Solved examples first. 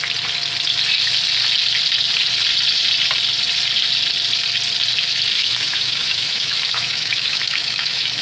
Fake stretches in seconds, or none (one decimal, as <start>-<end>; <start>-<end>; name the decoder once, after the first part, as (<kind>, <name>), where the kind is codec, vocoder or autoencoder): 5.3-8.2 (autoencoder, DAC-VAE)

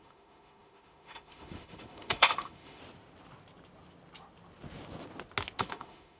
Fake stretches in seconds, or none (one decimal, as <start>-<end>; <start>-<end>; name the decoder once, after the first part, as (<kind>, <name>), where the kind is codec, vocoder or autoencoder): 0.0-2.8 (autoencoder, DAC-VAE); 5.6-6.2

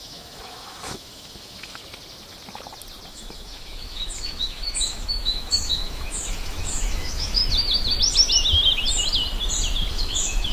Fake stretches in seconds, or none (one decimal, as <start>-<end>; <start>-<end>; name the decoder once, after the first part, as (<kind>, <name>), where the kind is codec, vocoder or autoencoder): 0.0-1.8 (autoencoder, DAC-VAE); 3.1-7.4; 9.9-10.5

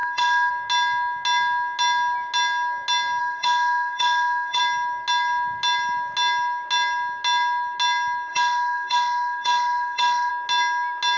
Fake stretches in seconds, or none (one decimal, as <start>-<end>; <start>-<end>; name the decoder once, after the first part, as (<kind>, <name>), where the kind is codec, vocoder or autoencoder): 0.0-0.5 (autoencoder, DAC-VAE); 3.2-4.6; 8.3-10.3

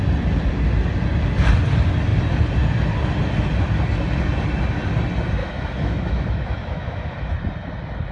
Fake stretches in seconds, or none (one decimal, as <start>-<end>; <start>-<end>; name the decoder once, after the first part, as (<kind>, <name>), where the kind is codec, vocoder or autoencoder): 5.4-7.3 (autoencoder, DAC-VAE)

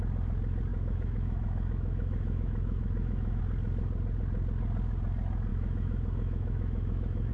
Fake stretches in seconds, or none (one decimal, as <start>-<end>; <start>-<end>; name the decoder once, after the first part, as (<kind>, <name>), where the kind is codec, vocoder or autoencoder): 0.7-3.4 (autoencoder, DAC-VAE); 5.5-7.3

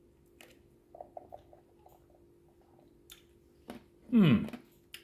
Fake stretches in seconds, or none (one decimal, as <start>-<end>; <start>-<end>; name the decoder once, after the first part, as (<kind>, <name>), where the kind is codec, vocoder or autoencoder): none

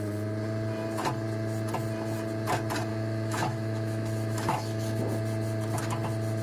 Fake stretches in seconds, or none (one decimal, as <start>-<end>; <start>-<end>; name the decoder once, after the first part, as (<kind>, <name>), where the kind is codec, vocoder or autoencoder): 2.9-5.0 (autoencoder, DAC-VAE)